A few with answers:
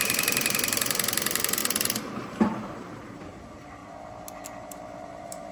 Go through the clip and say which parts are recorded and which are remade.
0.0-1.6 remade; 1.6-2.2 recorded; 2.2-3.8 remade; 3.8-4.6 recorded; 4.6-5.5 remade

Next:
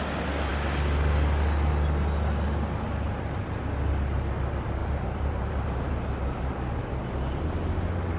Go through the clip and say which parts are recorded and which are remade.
0.0-4.8 recorded; 4.8-6.8 remade; 6.8-8.2 recorded

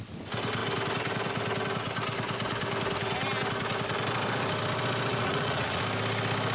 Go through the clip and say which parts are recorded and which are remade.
0.0-5.1 recorded; 5.1-5.8 remade; 5.8-6.5 recorded

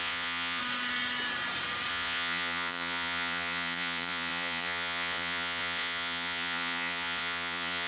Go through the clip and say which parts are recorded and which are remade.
0.0-0.6 remade; 0.6-1.9 recorded; 1.9-7.9 remade

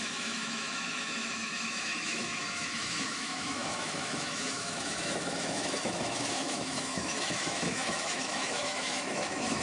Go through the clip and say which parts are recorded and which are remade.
0.0-9.6 remade

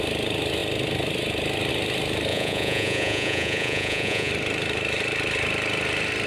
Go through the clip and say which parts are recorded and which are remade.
0.0-2.3 recorded; 2.3-4.3 remade; 4.3-6.3 recorded

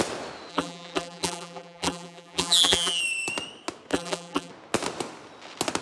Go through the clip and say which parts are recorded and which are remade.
0.0-0.5 recorded; 0.5-3.0 remade; 3.0-3.9 recorded; 3.9-4.5 remade; 4.5-5.8 recorded

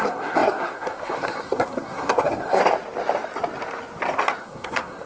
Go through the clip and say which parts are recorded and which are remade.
0.0-2.6 remade; 2.6-4.4 recorded; 4.4-5.1 remade